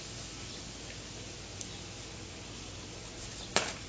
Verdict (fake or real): real